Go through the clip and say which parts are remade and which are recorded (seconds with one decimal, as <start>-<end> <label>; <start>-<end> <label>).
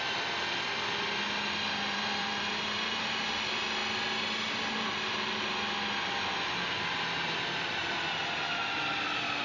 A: 0.0-1.7 recorded; 1.7-3.2 remade; 3.2-9.4 recorded